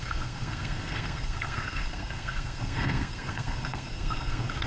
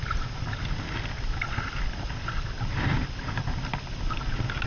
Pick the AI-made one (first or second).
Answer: first